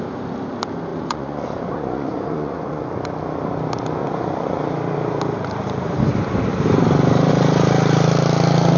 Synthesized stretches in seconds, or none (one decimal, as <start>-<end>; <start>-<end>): 0.9-2.8; 4.0-4.6